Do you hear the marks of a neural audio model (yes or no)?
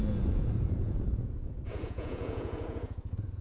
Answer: yes